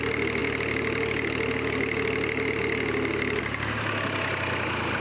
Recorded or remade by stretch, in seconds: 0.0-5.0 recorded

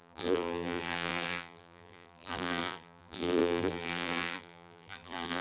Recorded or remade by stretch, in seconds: 0.0-5.4 remade

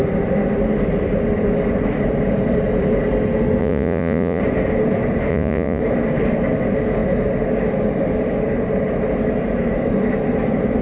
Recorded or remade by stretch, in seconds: 0.0-3.6 recorded; 3.6-4.4 remade; 4.4-5.3 recorded; 5.3-5.8 remade; 5.8-10.8 recorded

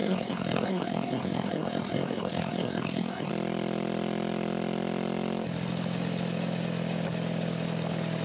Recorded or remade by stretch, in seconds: 0.0-3.3 remade; 3.3-8.2 recorded

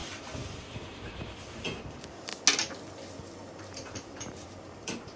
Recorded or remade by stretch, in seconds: 0.0-2.3 remade; 2.3-3.6 recorded; 3.6-5.2 remade

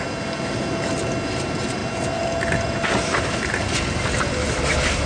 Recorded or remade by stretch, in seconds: 0.0-5.1 recorded